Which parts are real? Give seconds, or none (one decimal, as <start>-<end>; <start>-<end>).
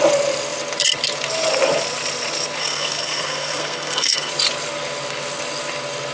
0.0-2.6; 4.3-6.1